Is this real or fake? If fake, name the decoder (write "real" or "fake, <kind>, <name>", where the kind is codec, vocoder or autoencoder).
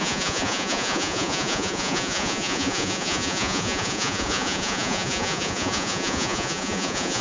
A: fake, vocoder, Vocos